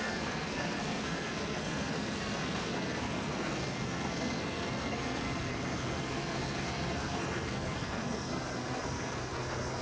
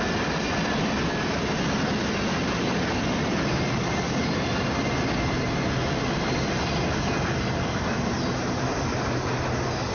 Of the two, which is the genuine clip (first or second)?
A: second